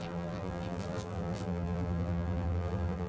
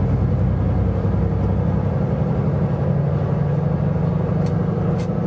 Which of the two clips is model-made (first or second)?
first